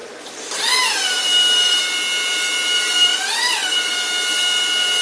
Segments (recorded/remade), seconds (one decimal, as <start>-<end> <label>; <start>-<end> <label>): 0.0-1.8 remade; 1.8-3.1 recorded; 3.1-3.9 remade; 3.9-5.0 recorded